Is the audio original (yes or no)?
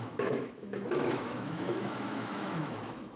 no